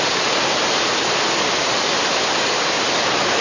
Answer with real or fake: real